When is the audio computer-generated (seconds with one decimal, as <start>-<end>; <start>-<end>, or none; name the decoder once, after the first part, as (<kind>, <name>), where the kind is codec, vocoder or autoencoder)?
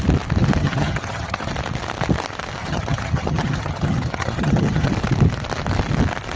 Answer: 0.6-1.5 (vocoder, HiFi-GAN); 2.6-4.9